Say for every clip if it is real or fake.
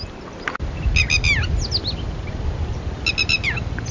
real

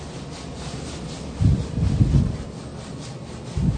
real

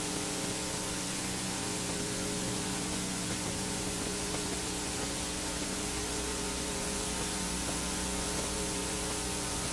fake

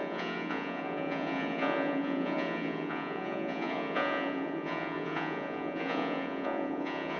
fake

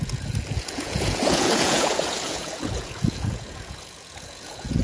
fake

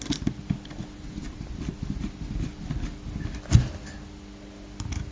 real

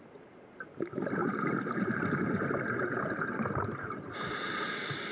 real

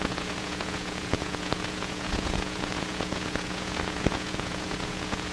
fake